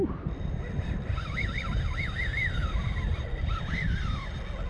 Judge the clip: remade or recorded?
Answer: recorded